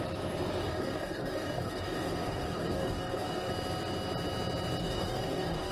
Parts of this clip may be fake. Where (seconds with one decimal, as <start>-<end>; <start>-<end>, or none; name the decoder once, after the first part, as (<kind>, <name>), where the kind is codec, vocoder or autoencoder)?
0.6-3.5 (codec, DAC); 4.8-5.7